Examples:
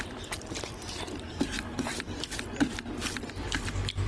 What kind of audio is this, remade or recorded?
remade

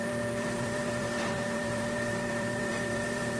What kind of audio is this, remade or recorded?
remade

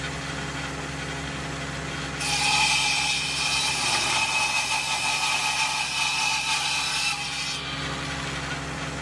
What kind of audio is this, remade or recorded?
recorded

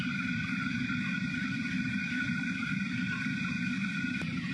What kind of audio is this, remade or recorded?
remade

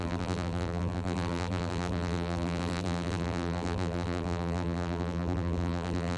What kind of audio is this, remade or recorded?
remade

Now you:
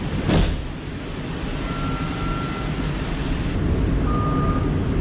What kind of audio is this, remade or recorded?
recorded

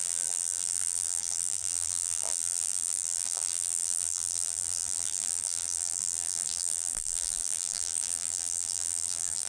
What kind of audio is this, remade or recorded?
remade